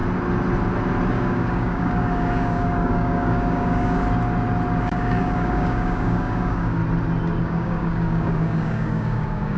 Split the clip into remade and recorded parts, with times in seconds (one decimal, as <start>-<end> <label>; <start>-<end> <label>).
0.0-1.1 recorded; 1.1-4.0 remade; 4.0-4.8 recorded; 4.8-6.8 remade; 6.8-7.4 recorded; 7.4-9.6 remade